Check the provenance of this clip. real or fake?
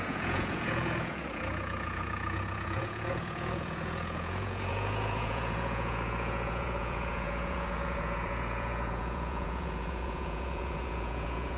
fake